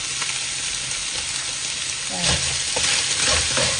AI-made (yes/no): no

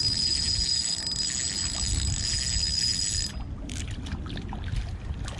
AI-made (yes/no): no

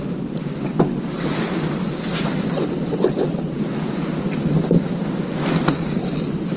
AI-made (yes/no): no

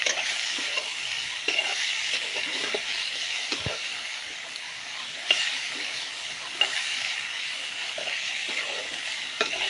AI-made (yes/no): yes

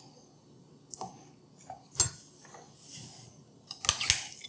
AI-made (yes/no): no